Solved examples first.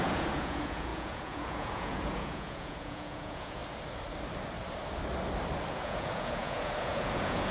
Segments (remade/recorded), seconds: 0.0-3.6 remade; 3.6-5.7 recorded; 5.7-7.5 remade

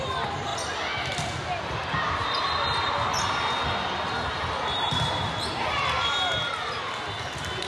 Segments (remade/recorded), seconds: 0.0-7.7 recorded

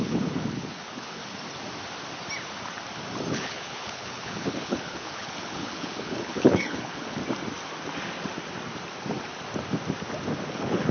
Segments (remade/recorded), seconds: 0.0-1.2 remade; 1.2-3.3 recorded; 3.3-7.2 remade; 7.2-10.5 recorded; 10.5-10.9 remade

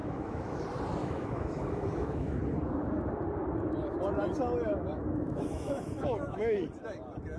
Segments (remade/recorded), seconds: 0.0-0.6 remade; 0.6-1.0 recorded; 1.0-2.4 remade; 2.4-4.7 recorded; 4.7-6.6 remade; 6.6-7.4 recorded

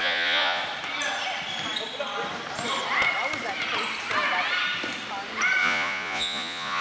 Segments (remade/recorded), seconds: 0.0-0.6 remade; 0.6-5.6 recorded; 5.6-6.8 remade